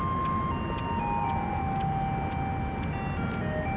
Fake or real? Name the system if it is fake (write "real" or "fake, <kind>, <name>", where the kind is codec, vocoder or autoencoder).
real